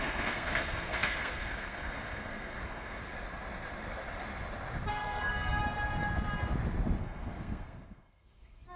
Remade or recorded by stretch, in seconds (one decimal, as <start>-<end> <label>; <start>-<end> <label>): 0.0-3.0 remade; 3.0-4.9 recorded; 4.9-5.6 remade; 5.6-7.0 recorded; 7.0-8.8 remade